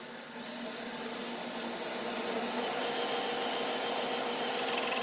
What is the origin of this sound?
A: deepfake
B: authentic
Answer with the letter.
B